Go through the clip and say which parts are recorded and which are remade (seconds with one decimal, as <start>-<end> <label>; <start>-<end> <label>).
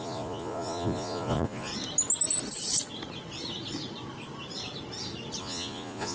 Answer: 0.0-1.7 remade; 1.7-5.4 recorded; 5.4-6.1 remade